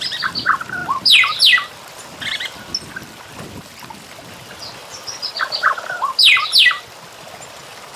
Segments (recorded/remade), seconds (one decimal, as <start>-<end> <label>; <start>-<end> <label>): 0.0-4.8 recorded; 4.8-5.3 remade; 5.3-8.0 recorded